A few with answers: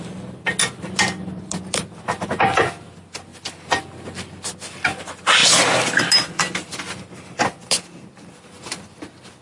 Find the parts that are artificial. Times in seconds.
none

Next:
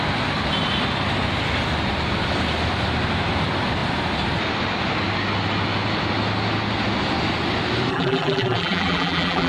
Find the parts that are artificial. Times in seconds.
7.9-9.5 (vocoder, BigVGAN v2)